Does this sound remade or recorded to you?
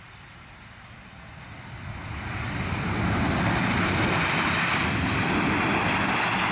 recorded